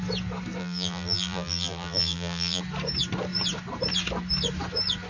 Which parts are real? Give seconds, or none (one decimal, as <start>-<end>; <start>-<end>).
0.0-0.6; 2.6-5.1